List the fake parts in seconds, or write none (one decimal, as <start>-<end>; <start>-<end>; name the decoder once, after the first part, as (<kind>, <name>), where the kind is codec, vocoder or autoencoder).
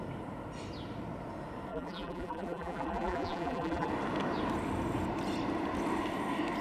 1.7-3.9 (vocoder, BigVGAN v2)